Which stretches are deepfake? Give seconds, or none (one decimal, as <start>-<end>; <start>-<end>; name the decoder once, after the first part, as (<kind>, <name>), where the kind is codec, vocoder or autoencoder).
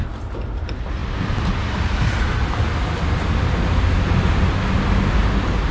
none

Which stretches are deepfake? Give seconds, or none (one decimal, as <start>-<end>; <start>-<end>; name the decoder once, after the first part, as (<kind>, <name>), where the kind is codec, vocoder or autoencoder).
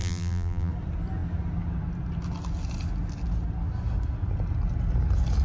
0.0-0.7 (vocoder, BigVGAN v2)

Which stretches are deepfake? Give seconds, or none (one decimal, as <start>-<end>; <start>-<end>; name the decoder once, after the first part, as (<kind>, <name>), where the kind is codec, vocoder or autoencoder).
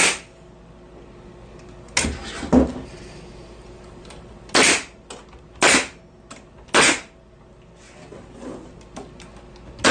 none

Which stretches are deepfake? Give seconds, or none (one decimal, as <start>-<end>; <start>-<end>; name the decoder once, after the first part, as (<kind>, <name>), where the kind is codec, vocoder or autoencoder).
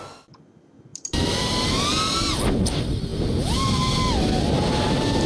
0.9-1.8 (vocoder, BigVGAN v2)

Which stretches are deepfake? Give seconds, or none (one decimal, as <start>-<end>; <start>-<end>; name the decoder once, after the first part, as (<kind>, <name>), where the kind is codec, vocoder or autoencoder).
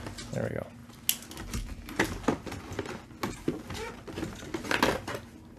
none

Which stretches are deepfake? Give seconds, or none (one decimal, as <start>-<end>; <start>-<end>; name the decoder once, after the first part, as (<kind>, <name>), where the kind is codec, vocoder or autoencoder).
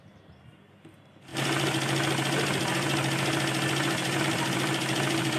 0.0-1.3 (vocoder, BigVGAN v2); 4.2-5.4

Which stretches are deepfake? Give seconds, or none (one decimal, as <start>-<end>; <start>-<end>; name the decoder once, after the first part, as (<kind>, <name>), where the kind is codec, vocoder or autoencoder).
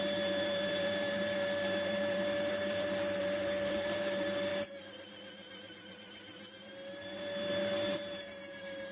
0.0-8.9 (vocoder, BigVGAN v2)